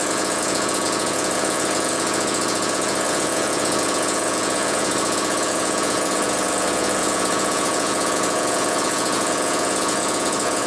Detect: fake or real fake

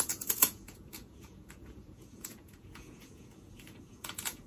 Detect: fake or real fake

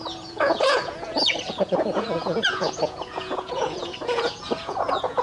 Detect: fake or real fake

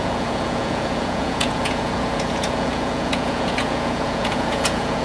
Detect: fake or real fake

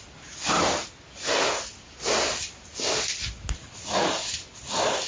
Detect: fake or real real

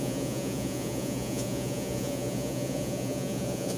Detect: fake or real fake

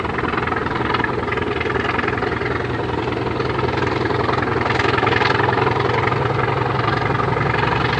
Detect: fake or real real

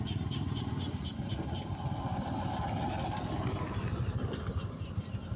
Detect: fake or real real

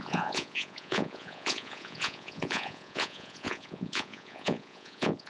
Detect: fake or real fake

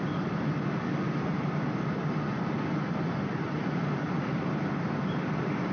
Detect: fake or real real